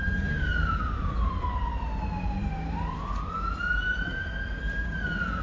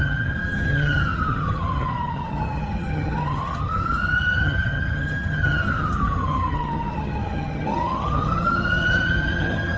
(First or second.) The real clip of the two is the first